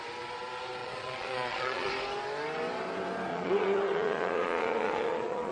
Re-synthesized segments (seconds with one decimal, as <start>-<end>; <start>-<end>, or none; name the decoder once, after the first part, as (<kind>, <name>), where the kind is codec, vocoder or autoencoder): 0.8-1.9 (vocoder, Vocos); 3.3-5.5